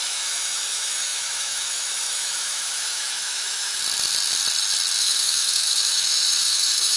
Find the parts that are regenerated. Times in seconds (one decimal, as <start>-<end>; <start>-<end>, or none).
0.0-3.8; 5.0-7.0